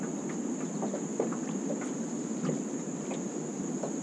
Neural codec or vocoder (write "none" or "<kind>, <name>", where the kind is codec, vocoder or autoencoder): none